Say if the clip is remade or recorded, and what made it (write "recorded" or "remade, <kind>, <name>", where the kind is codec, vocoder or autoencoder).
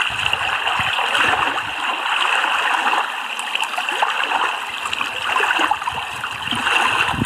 recorded